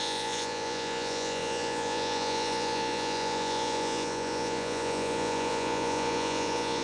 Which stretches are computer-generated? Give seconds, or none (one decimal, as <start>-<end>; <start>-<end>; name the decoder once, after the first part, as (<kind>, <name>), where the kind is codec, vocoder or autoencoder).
0.0-6.8 (vocoder, Vocos)